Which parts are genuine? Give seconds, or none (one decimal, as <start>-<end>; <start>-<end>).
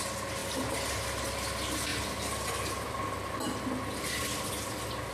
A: 0.0-5.1